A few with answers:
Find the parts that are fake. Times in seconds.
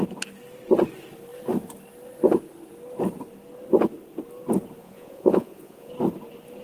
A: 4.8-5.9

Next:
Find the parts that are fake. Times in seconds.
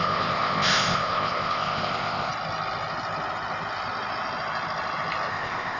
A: 0.0-2.3; 5.3-5.8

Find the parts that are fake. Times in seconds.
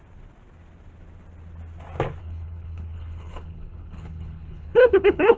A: 2.2-5.4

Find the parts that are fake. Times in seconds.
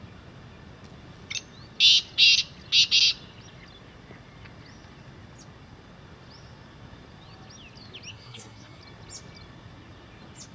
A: 8.1-8.8